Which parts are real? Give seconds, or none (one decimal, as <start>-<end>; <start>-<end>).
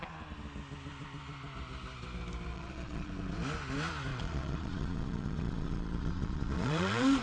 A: 0.0-2.5; 3.1-4.1